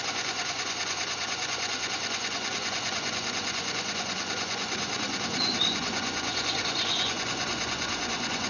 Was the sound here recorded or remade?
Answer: remade